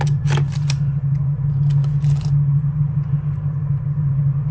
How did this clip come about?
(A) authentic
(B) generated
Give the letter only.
A